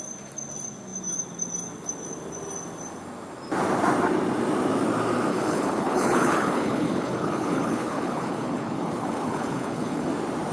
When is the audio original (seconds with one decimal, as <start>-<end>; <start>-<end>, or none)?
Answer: 0.0-5.3; 10.1-10.5